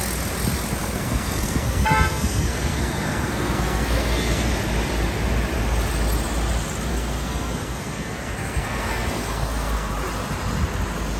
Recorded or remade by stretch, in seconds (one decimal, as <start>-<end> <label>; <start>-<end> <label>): 0.0-0.8 recorded; 0.8-4.5 remade; 4.5-6.9 recorded; 6.9-9.9 remade; 9.9-11.2 recorded